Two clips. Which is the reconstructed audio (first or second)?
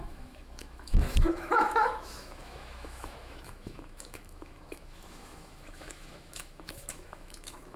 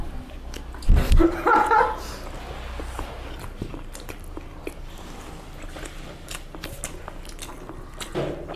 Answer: first